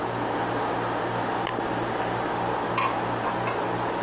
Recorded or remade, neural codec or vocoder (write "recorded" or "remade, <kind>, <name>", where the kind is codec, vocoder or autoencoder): recorded